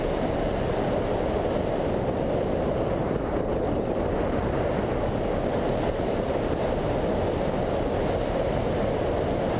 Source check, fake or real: real